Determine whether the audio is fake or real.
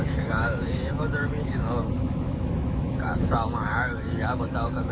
fake